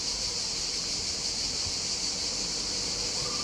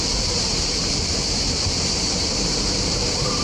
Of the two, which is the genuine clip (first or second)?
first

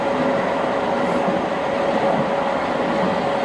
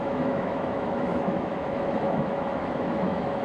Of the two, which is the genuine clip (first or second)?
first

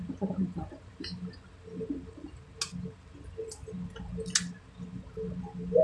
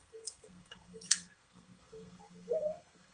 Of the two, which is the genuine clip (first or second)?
first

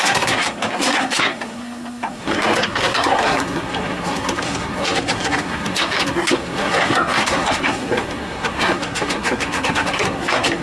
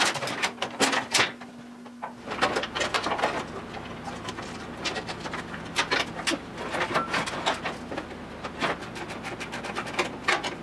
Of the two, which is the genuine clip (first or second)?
second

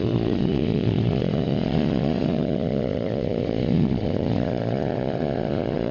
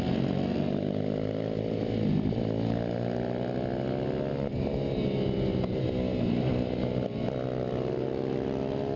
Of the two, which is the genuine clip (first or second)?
second